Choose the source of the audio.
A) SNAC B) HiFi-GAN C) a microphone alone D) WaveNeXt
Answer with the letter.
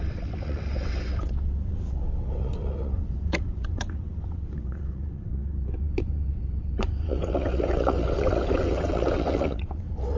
D